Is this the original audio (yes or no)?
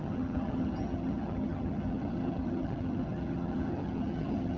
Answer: no